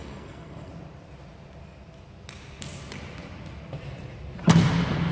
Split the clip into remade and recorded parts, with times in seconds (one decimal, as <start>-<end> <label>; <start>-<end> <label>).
0.0-0.7 remade; 0.7-5.1 recorded